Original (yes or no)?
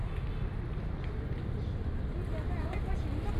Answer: yes